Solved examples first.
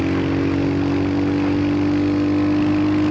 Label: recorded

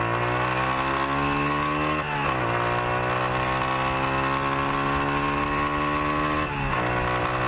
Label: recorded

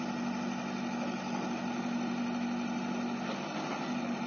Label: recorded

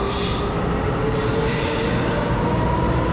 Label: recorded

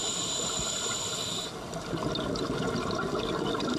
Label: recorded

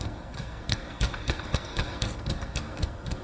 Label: remade